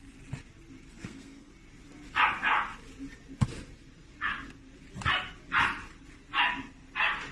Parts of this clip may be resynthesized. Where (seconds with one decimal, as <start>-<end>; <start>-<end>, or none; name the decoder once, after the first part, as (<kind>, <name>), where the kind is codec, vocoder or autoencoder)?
1.0-1.5 (codec, SNAC)